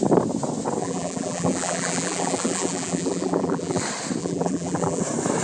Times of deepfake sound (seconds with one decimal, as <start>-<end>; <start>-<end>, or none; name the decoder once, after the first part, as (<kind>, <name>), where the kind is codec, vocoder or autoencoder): 0.8-3.8 (vocoder, BigVGAN v2); 4.2-5.0